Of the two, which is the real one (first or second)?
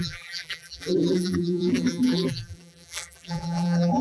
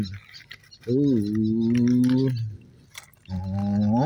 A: second